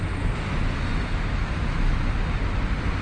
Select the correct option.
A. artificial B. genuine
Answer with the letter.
B